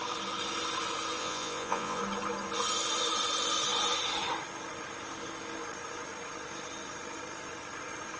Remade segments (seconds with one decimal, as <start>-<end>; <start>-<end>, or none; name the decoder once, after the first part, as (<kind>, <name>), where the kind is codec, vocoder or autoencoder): 1.2-2.0 (vocoder, Vocos)